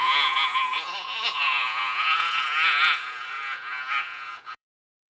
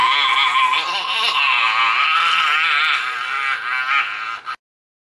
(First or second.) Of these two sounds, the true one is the second